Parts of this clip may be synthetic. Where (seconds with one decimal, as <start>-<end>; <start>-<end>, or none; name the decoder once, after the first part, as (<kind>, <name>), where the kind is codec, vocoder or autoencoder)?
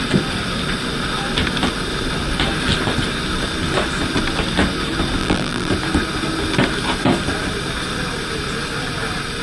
5.2-5.7 (vocoder, BigVGAN v2)